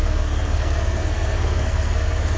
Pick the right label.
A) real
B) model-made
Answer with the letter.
B